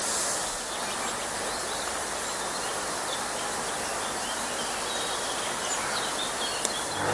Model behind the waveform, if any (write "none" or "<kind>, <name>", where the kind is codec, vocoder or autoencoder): none